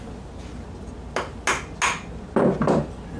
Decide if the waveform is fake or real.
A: real